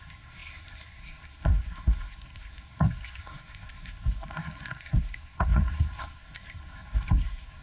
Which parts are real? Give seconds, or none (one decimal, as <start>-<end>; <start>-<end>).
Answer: none